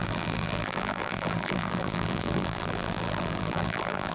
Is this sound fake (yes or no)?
yes